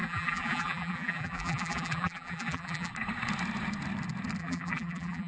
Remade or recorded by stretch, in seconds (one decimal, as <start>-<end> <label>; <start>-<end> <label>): 0.0-2.9 remade; 2.9-4.4 recorded; 4.4-5.3 remade